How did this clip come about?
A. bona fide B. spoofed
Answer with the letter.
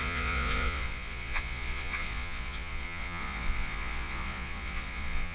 B